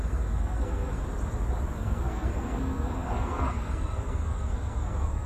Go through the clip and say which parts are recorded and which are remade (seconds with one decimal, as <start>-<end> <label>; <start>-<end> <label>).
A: 0.0-1.0 remade; 1.0-1.8 recorded; 1.8-5.3 remade